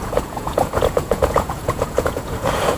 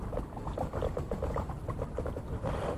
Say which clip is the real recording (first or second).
second